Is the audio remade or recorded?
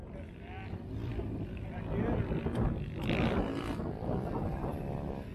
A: recorded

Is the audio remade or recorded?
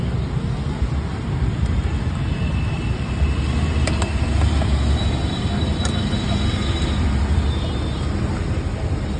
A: recorded